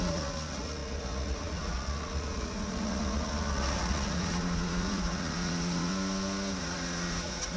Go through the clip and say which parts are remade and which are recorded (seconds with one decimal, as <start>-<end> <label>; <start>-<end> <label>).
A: 0.0-5.9 remade; 5.9-6.6 recorded; 6.6-7.6 remade